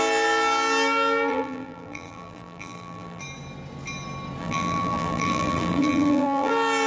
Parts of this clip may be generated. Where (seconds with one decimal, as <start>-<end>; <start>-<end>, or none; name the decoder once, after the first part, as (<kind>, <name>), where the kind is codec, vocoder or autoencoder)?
1.3-3.2 (vocoder, BigVGAN v2); 4.4-6.5

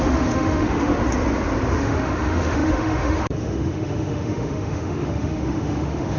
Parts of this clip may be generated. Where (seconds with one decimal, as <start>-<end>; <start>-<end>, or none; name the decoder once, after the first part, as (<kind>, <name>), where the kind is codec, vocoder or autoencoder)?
0.0-0.9 (autoencoder, DAC-VAE); 1.8-6.2

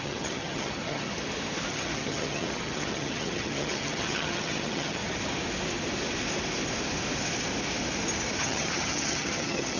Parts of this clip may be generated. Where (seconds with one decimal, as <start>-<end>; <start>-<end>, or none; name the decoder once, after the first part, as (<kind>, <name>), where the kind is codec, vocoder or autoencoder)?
0.0-1.1 (vocoder, HiFi-GAN); 1.7-5.0; 8.4-9.8